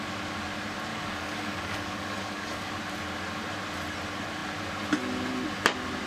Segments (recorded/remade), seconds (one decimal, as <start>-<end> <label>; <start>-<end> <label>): 0.0-0.9 recorded; 0.9-2.7 remade; 2.7-6.1 recorded